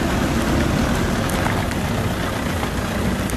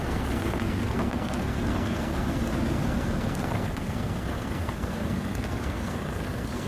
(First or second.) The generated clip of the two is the second